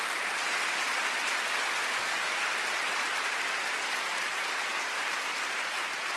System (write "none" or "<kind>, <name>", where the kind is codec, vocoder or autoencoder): none